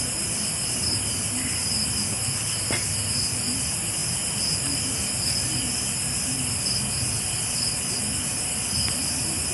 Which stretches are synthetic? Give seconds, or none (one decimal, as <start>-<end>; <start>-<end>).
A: none